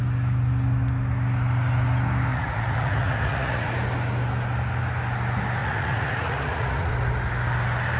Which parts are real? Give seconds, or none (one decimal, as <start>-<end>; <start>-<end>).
0.0-2.3; 3.7-5.6; 6.9-8.0